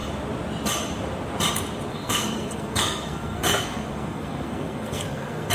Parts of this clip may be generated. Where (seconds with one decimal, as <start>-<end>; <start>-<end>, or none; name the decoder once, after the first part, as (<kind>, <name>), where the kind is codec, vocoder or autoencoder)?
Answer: 1.9-5.5 (codec, SNAC)